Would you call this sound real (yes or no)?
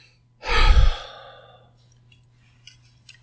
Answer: yes